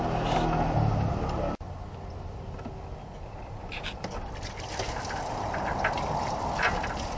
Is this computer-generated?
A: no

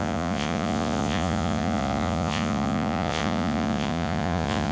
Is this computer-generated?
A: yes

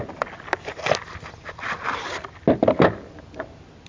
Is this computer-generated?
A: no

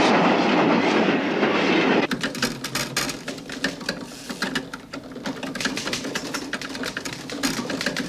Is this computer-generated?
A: no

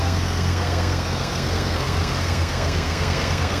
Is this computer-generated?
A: yes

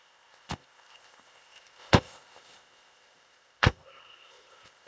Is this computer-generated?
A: yes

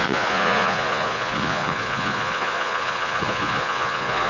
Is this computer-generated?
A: yes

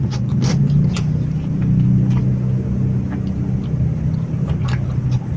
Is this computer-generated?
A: no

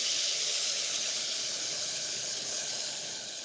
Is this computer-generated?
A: yes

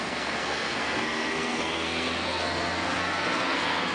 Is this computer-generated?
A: yes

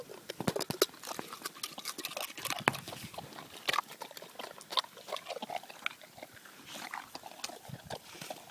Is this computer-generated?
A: no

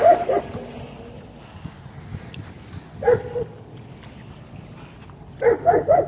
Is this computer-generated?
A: no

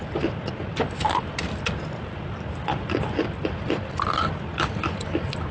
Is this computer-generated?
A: no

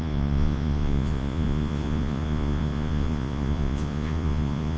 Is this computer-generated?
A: yes